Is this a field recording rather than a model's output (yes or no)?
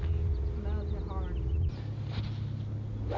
yes